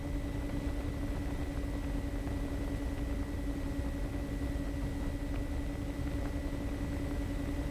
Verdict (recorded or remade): recorded